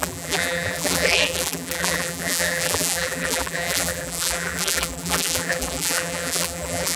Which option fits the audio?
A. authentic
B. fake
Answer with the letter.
B